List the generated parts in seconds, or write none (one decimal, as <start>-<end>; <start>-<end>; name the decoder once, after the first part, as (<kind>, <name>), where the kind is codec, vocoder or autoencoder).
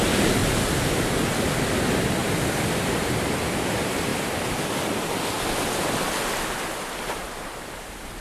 2.2-3.1 (vocoder, BigVGAN v2)